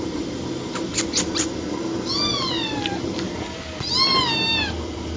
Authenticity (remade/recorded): recorded